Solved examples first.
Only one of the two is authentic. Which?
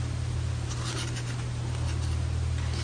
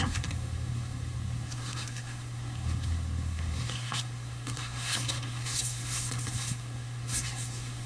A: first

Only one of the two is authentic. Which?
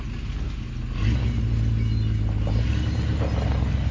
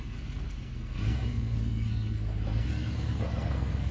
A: first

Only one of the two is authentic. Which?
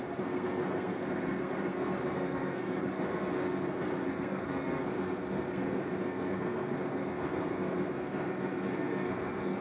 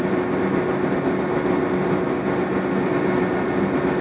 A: second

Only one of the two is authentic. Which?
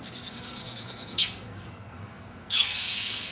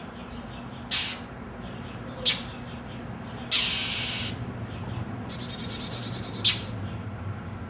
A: second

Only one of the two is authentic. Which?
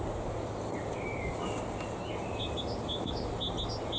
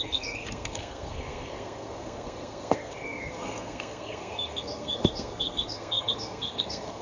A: first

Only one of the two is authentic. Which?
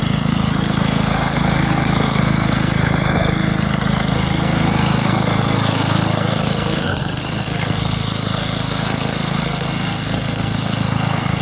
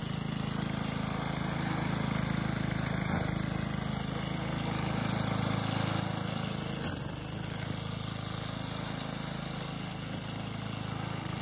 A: second